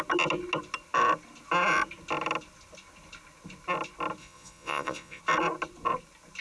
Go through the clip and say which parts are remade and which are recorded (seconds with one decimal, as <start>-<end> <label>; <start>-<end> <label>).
0.0-4.2 recorded; 4.2-5.2 remade; 5.2-6.4 recorded